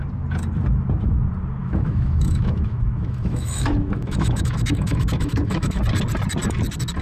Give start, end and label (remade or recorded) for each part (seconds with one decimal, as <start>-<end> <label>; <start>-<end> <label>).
0.0-1.6 recorded; 1.6-5.8 remade; 5.8-7.0 recorded